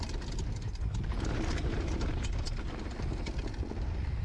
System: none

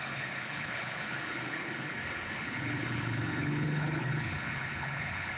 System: codec, HILCodec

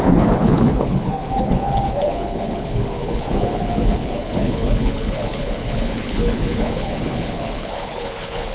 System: codec, HILCodec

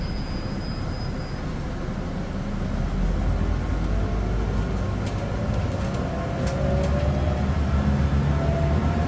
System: none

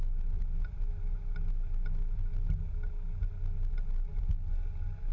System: none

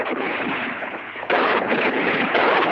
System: codec, HILCodec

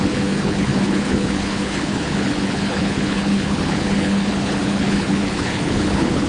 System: codec, HILCodec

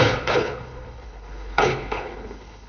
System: codec, HILCodec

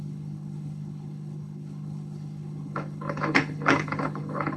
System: codec, HILCodec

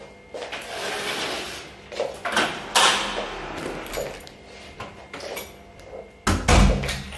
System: none